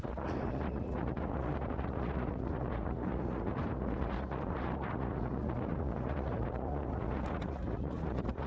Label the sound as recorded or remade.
remade